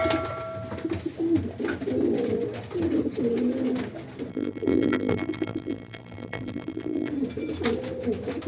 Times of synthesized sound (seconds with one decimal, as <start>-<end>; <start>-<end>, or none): 4.3-7.1